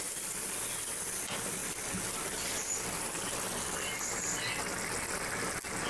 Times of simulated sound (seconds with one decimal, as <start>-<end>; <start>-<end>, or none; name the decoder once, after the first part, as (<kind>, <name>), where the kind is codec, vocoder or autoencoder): none